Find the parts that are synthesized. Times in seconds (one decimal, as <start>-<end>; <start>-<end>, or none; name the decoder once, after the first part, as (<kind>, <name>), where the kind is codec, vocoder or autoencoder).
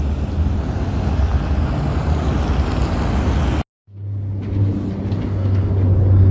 none